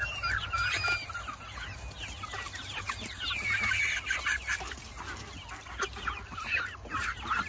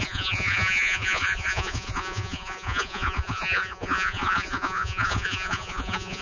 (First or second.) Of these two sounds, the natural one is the first